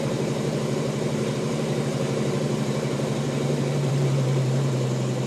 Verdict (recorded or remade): remade